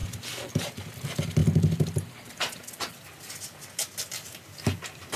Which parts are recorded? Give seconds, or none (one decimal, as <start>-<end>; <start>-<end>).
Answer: 0.0-5.2